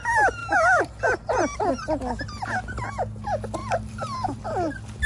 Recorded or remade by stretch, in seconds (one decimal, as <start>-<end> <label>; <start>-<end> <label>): 0.0-0.4 recorded; 0.4-1.7 remade; 1.7-3.6 recorded; 3.6-4.4 remade; 4.4-5.1 recorded